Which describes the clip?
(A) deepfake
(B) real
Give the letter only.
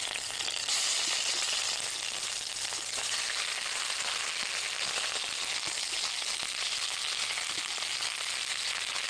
B